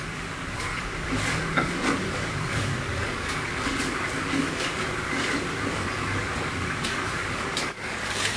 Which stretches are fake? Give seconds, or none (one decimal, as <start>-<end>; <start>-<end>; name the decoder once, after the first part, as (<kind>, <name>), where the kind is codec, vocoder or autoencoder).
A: 0.0-8.4 (codec, DAC)